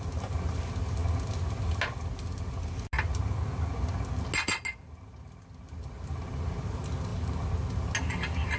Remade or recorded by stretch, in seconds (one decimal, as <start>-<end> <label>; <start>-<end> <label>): 0.0-8.6 recorded